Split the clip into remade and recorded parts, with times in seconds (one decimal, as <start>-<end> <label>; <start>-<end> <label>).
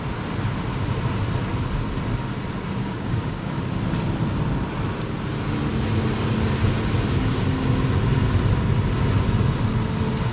0.0-2.8 recorded; 2.8-3.8 remade; 3.8-10.3 recorded